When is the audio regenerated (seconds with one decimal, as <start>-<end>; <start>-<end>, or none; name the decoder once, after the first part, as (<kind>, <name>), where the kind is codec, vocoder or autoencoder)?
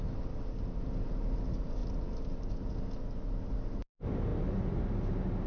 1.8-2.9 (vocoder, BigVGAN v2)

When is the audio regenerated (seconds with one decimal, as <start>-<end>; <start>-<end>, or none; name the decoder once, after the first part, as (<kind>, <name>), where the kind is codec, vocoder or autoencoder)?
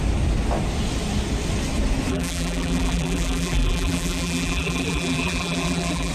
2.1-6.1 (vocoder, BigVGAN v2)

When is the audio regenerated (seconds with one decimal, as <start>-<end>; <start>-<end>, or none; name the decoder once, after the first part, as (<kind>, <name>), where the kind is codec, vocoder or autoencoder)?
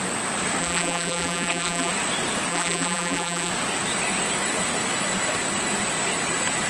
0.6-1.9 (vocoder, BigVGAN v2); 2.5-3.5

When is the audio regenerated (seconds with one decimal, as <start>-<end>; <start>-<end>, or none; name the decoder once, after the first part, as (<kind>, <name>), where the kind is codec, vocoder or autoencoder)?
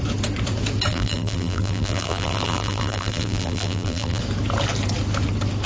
0.9-4.2 (vocoder, BigVGAN v2)